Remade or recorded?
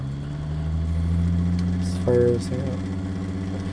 recorded